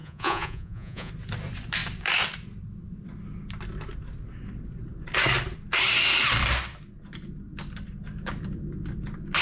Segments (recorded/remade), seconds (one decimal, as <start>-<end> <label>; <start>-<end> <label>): 0.0-1.1 remade; 1.1-9.4 recorded